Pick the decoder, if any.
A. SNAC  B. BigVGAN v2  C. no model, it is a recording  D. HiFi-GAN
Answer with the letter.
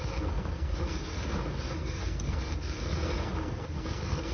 A